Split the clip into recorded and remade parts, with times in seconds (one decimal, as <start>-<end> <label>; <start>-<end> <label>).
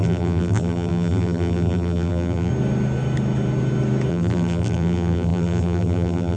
0.0-2.5 remade; 2.5-4.1 recorded; 4.1-6.4 remade